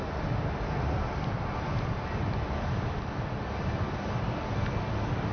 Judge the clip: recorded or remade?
recorded